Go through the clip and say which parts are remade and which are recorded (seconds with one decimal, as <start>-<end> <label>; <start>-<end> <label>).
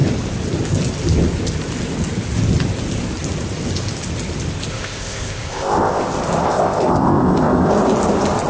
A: 0.0-4.7 recorded; 4.7-6.0 remade; 6.0-6.4 recorded; 6.4-7.7 remade; 7.7-8.5 recorded